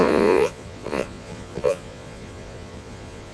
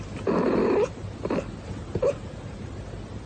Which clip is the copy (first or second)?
first